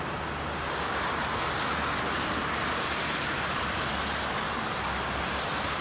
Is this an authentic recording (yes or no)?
yes